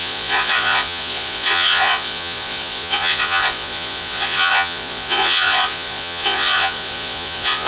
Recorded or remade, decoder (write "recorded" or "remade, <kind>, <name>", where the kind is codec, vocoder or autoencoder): remade, vocoder, Vocos